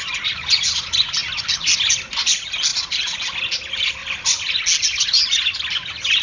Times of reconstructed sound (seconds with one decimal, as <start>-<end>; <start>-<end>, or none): 2.7-3.4; 4.0-4.5